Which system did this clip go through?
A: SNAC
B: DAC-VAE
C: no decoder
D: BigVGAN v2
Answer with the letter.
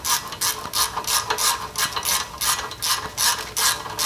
C